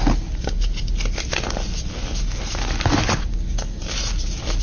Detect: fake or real real